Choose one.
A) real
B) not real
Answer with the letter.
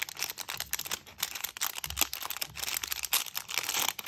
A